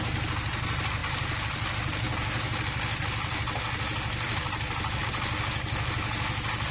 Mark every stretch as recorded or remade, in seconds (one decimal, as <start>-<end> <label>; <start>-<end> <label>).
0.0-1.0 recorded; 1.0-5.0 remade; 5.0-6.7 recorded